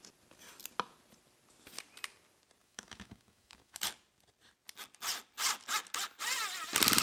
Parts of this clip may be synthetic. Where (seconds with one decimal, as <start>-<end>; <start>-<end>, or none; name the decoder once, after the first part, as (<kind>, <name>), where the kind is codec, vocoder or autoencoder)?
2.6-3.8 (autoencoder, DAC-VAE)